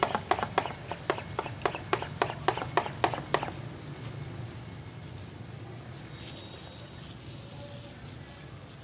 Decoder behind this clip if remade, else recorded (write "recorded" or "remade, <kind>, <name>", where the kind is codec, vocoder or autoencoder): recorded